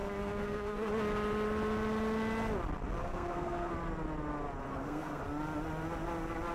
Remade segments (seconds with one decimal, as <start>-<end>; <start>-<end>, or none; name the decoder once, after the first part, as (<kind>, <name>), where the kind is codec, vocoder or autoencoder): 0.0-0.9 (codec, SNAC); 3.0-3.7; 4.7-5.2